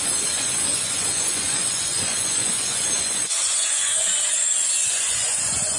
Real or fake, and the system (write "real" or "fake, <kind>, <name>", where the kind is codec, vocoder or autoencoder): fake, vocoder, Vocos